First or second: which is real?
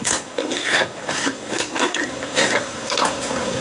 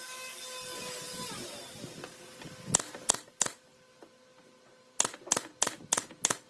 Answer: second